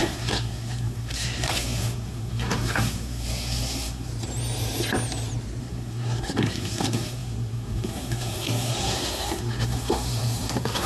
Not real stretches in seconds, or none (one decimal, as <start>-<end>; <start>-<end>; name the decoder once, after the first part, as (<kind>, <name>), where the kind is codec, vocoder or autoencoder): 0.0-4.1 (codec, SNAC); 5.6-10.9